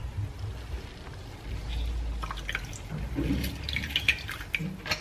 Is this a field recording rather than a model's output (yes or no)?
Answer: yes